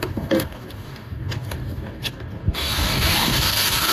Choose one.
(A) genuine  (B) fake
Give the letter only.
B